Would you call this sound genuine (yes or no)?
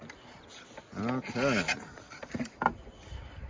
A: yes